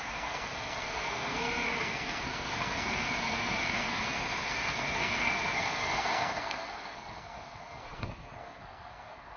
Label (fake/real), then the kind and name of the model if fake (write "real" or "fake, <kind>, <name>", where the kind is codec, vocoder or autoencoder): fake, codec, SNAC